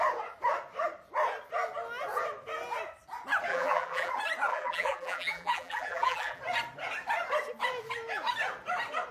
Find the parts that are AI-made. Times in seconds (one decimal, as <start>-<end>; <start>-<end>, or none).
3.5-4.1; 4.5-6.4